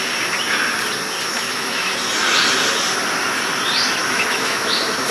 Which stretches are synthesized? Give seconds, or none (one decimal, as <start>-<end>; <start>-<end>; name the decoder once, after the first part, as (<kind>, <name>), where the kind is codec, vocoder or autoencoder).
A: 1.3-1.9 (autoencoder, DAC-VAE); 4.0-5.1